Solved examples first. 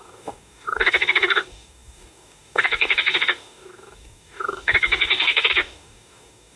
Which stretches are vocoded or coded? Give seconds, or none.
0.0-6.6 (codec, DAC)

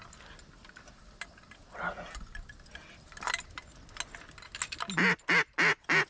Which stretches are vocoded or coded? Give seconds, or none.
none

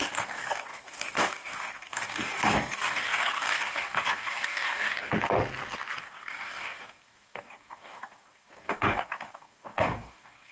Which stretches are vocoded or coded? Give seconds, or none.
0.0-5.1 (codec, DAC); 6.0-10.5

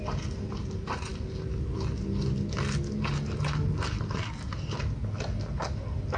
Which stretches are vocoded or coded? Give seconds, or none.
none